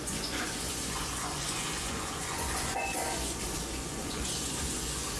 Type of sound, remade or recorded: remade